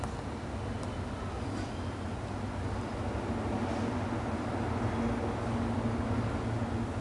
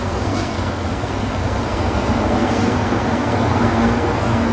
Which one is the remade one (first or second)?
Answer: second